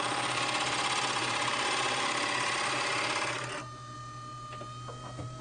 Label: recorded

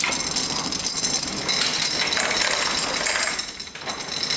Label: recorded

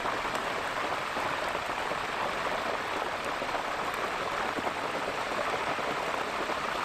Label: recorded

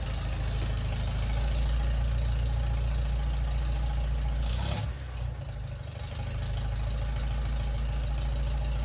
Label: recorded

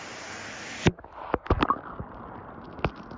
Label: recorded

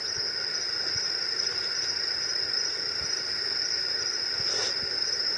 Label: recorded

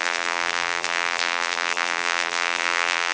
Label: remade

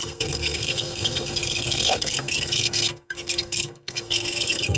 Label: remade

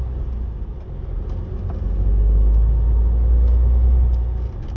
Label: recorded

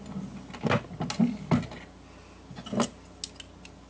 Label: recorded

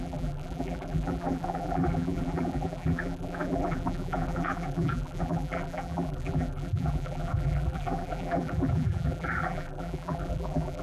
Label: remade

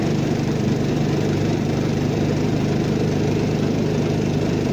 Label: remade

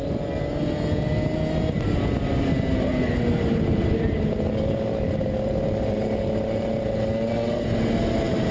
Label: recorded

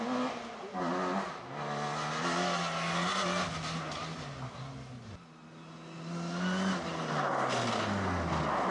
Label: recorded